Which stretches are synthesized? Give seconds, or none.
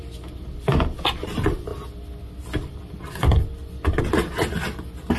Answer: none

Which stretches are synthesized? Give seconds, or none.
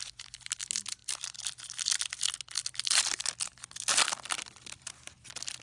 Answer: none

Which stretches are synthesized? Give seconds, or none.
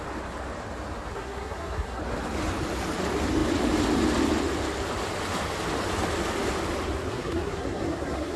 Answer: 1.1-2.0 (codec, SNAC); 7.1-8.4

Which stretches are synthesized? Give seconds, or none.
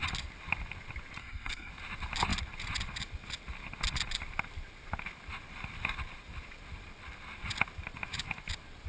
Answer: 1.2-1.7 (codec, SNAC)